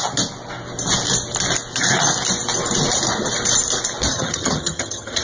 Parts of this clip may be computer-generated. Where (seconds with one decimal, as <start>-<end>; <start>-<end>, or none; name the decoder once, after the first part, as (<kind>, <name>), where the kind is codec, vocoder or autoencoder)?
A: 4.1-5.2 (vocoder, HiFi-GAN)